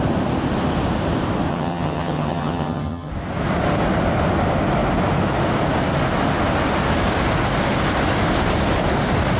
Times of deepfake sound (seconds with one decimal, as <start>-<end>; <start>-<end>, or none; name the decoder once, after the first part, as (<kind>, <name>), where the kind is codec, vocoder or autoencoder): 1.5-3.1 (vocoder, HiFi-GAN)

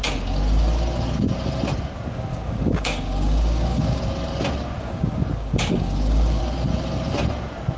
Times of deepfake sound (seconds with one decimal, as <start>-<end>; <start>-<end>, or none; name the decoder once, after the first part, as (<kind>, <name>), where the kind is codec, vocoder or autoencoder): 2.3-4.0 (codec, DAC); 4.8-6.4